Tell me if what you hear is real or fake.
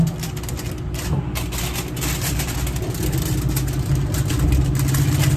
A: real